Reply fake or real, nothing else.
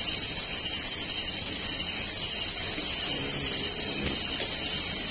real